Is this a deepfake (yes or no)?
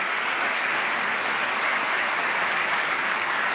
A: yes